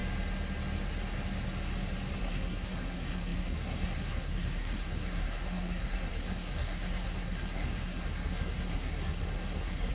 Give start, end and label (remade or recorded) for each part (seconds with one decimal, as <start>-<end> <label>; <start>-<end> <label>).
0.0-2.2 recorded; 2.2-9.9 remade